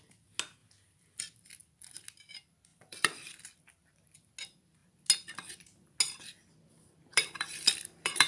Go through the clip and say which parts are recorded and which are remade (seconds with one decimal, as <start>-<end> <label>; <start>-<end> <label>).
0.0-2.7 recorded; 2.7-3.6 remade; 3.6-7.1 recorded; 7.1-8.3 remade